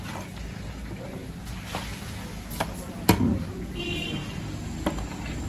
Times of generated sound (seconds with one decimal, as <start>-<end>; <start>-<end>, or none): none